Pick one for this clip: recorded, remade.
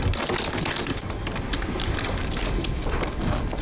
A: recorded